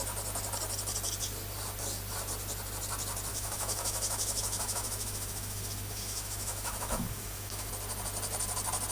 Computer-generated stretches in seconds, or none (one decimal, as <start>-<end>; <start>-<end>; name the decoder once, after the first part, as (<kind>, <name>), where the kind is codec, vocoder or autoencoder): 3.3-7.7 (autoencoder, DAC-VAE)